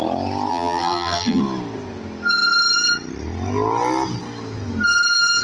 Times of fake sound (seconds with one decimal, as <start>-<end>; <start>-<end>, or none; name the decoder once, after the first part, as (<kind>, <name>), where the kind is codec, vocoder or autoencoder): 0.5-1.4 (vocoder, BigVGAN v2)